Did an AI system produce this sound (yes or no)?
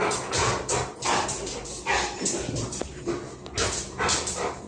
no